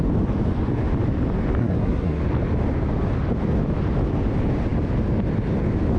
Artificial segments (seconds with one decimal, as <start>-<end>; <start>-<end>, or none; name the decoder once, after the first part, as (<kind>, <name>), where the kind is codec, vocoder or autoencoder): 1.6-2.2 (codec, SNAC)